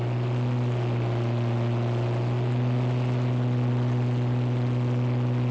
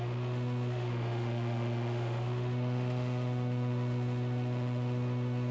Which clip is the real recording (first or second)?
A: first